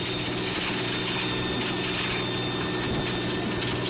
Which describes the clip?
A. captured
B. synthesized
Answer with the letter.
A